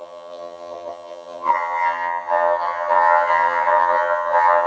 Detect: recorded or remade remade